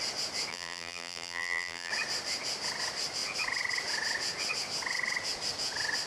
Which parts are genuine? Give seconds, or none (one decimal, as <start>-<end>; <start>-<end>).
0.0-0.5; 1.9-6.1